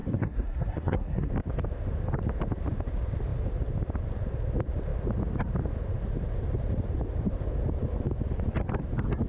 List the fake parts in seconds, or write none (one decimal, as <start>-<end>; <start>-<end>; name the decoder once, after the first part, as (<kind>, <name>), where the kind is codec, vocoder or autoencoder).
0.0-1.3 (codec, SNAC)